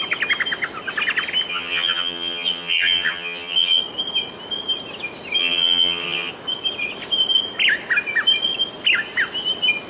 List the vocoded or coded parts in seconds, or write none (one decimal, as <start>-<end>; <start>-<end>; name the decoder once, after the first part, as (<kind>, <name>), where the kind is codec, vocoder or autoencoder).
1.5-3.8 (vocoder, HiFi-GAN); 5.4-6.3